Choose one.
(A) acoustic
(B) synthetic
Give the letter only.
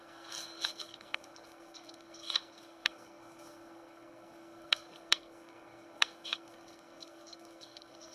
B